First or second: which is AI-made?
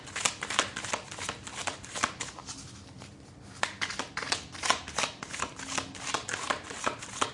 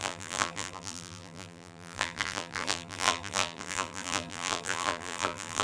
second